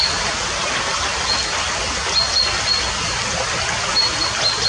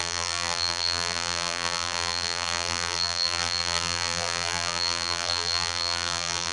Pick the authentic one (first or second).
first